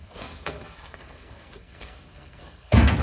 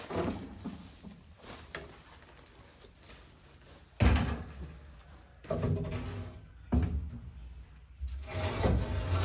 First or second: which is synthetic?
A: first